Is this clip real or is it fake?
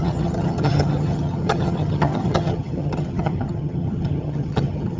fake